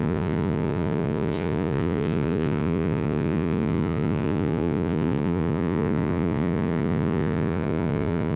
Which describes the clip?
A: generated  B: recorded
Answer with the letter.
A